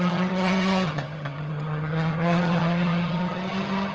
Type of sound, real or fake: fake